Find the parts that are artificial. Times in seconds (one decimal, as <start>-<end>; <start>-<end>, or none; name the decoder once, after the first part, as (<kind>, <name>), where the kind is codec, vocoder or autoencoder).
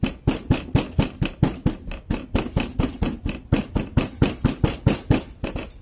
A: none